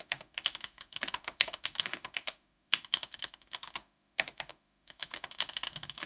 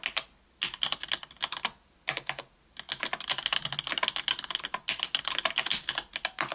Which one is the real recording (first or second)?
second